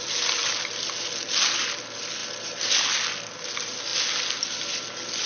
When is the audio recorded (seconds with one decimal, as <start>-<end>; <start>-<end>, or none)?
0.0-5.3